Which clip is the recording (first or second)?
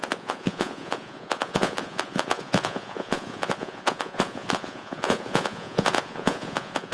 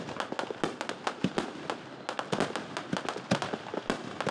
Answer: second